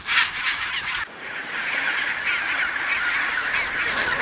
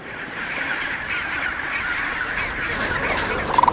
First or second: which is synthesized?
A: second